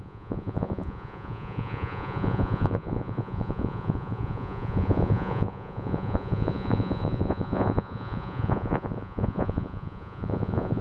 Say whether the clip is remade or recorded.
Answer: remade